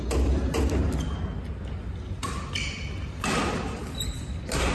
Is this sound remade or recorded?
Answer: recorded